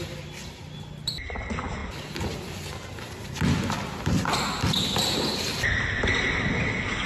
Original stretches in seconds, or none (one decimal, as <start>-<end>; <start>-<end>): 0.0-7.1